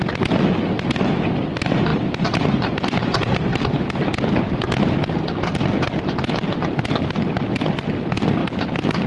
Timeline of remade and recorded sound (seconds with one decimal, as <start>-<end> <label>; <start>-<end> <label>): 0.0-1.9 recorded; 1.9-6.0 remade; 6.0-8.4 recorded; 8.4-9.1 remade